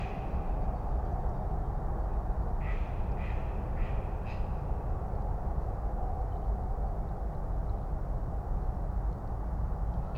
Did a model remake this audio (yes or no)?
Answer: no